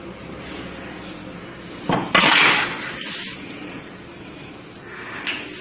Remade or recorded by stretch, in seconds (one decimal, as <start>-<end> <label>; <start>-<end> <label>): 0.0-2.2 recorded; 2.2-4.1 remade; 4.1-5.6 recorded